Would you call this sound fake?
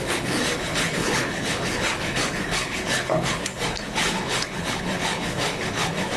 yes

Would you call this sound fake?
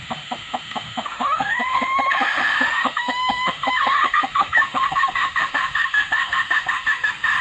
yes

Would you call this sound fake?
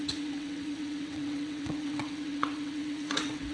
yes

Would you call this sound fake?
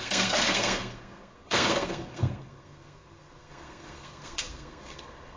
yes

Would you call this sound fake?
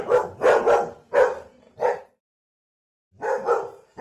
no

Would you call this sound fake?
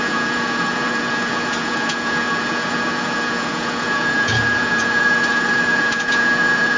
yes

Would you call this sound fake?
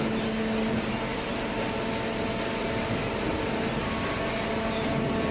no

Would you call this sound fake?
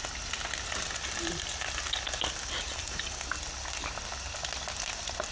no